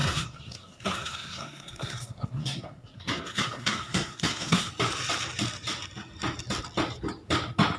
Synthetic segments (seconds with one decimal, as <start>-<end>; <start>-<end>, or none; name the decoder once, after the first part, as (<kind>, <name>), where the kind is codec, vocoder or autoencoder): 0.0-4.7 (codec, SNAC)